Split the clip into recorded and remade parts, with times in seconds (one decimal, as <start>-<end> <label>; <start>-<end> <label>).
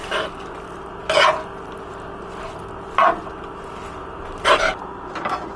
0.0-4.0 recorded; 4.0-4.8 remade; 4.8-5.6 recorded